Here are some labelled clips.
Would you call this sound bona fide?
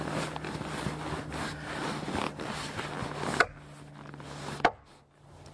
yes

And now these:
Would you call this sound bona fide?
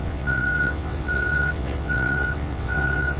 no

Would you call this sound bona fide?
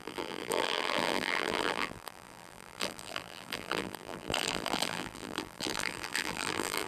no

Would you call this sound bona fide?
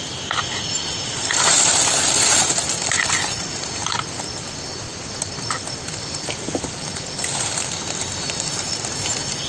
yes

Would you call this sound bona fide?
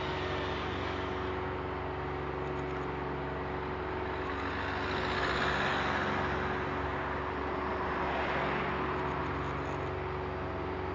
yes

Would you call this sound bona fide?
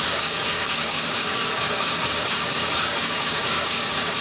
no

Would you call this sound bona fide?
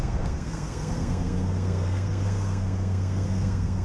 no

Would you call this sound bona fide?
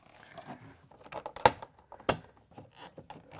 yes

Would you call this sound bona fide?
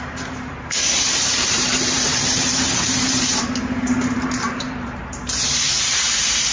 no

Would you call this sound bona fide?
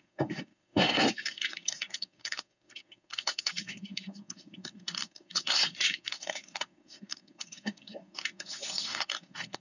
no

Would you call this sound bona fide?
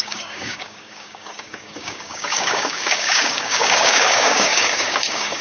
no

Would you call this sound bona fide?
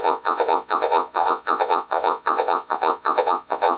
no